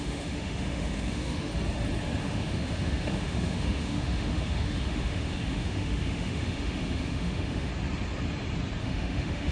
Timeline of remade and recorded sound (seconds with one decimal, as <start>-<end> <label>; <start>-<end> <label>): 0.0-1.5 remade; 1.5-2.2 recorded; 2.2-7.7 remade; 7.7-8.8 recorded; 8.8-9.5 remade